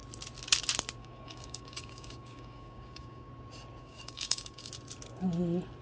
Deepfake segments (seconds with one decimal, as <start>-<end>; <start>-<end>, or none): 1.0-3.3; 3.8-4.7